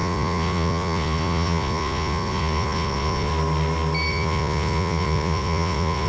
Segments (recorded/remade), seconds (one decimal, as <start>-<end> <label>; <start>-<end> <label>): 0.0-3.3 remade; 3.3-4.1 recorded; 4.1-6.1 remade